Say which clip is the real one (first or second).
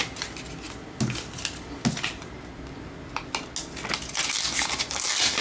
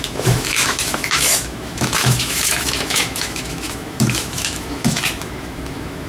first